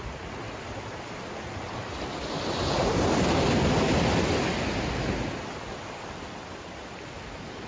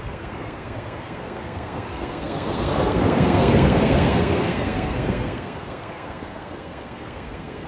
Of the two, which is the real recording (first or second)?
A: first